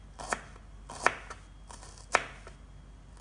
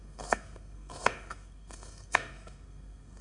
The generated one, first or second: second